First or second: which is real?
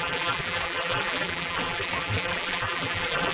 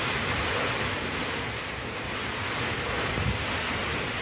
second